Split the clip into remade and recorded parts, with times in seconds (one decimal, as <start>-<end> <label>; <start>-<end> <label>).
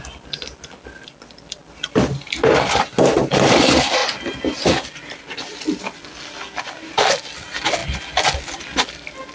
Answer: 0.0-9.3 recorded